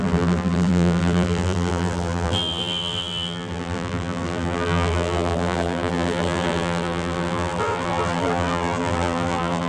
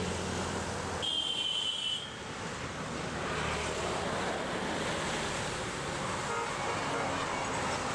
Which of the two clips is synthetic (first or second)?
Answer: first